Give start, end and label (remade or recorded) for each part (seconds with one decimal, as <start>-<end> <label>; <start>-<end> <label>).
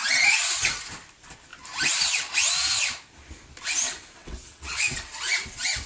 0.0-4.2 recorded; 4.2-5.2 remade; 5.2-5.9 recorded